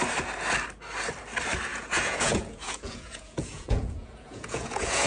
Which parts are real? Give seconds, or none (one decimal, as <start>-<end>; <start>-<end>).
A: 0.0-1.7